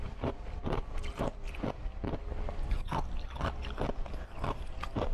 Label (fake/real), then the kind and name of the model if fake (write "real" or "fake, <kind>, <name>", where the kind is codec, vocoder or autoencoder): real